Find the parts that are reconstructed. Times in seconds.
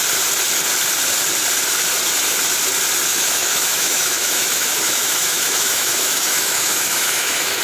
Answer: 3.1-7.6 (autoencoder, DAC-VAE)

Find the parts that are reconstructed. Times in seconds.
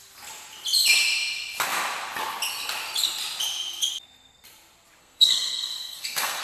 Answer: 5.0-6.4 (codec, SNAC)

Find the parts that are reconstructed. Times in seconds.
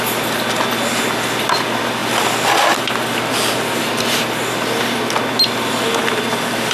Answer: none